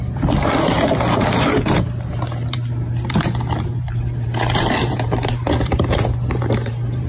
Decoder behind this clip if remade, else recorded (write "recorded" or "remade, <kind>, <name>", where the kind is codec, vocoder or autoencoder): remade, vocoder, BigVGAN v2